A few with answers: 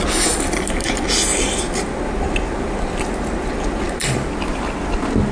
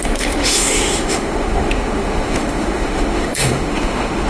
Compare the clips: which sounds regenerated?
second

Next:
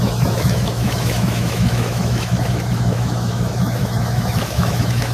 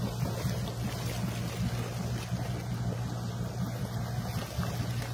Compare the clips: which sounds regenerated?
first